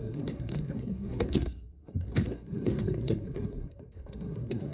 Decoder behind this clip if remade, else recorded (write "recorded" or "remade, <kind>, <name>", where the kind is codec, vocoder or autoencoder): remade, codec, SNAC